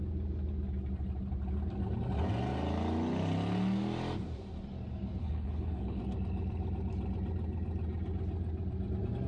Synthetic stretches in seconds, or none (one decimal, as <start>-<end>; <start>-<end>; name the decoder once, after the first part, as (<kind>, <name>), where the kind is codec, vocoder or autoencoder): 5.2-6.0 (codec, HILCodec)